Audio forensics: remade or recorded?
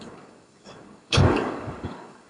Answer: remade